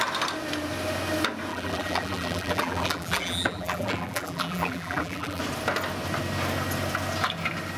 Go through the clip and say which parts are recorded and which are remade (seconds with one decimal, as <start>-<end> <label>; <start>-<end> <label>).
0.0-1.5 recorded; 1.5-5.4 remade; 5.4-7.8 recorded